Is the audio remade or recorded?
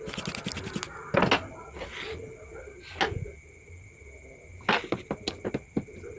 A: recorded